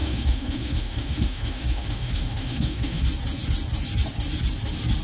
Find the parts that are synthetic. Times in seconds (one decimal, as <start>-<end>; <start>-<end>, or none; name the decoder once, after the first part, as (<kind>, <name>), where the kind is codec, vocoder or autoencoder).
0.0-3.0 (autoencoder, DAC-VAE)